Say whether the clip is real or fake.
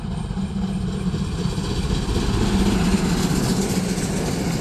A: real